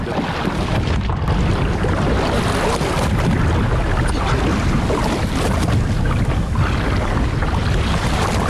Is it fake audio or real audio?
real